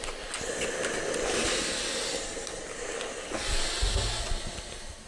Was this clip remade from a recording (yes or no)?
no